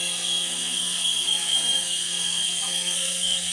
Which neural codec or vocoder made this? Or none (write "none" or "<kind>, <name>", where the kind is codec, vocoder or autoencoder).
codec, SNAC